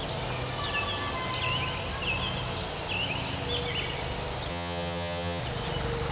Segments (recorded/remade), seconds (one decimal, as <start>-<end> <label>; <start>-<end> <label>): 0.0-4.5 recorded; 4.5-5.4 remade; 5.4-6.1 recorded